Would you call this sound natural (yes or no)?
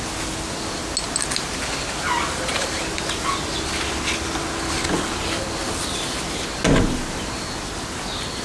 yes